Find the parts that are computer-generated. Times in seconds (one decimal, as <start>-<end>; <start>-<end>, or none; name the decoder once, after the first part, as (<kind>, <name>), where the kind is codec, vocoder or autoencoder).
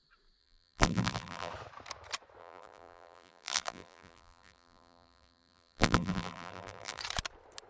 0.4-1.5 (vocoder, BigVGAN v2); 2.4-7.0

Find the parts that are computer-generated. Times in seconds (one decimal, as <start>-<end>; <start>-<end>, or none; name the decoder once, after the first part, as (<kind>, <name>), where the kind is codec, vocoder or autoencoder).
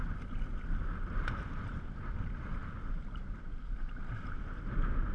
none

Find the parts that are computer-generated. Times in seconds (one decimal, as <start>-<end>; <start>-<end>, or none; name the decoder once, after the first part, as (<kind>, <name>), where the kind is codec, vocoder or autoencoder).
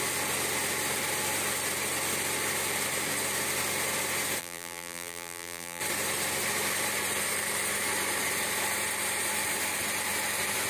4.4-5.8 (vocoder, BigVGAN v2)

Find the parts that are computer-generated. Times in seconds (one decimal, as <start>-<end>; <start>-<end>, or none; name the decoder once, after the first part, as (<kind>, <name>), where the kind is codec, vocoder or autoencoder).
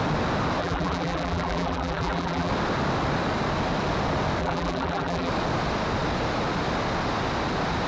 0.6-2.5 (vocoder, BigVGAN v2); 4.4-5.3